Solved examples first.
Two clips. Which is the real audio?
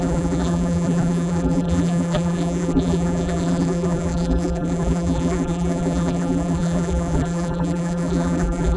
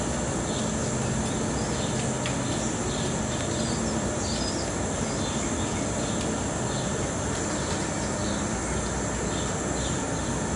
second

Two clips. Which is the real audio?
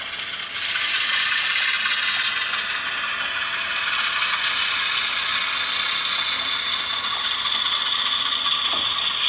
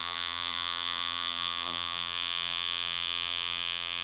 first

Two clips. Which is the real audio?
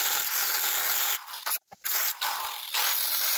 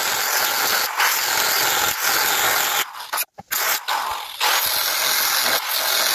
second